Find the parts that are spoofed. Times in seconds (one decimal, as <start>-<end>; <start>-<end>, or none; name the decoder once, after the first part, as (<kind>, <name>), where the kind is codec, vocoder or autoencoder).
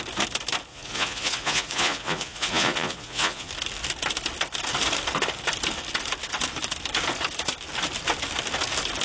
0.7-3.5 (vocoder, Vocos)